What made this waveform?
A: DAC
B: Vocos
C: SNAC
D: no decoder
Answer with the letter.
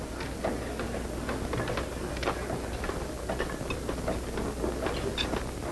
D